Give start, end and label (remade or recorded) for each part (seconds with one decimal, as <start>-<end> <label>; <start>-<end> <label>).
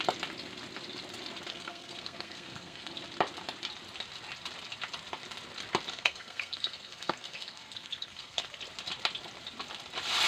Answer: 0.0-1.5 recorded; 1.5-2.9 remade; 2.9-5.9 recorded; 5.9-8.6 remade; 8.6-10.3 recorded